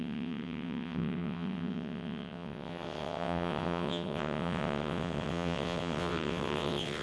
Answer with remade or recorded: remade